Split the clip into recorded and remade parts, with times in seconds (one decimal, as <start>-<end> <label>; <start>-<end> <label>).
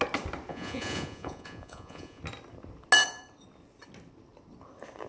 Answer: 0.0-0.5 recorded; 0.5-2.2 remade; 2.2-5.1 recorded